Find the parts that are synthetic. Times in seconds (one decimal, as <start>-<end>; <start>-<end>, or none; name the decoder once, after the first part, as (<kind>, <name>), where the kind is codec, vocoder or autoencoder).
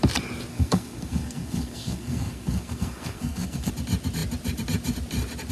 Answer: 0.5-3.7 (codec, SNAC)